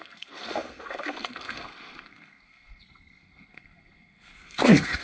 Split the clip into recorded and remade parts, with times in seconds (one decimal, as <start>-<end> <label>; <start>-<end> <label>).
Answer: 0.0-5.0 remade